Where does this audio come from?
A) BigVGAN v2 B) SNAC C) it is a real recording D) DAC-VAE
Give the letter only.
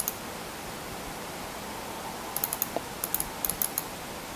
C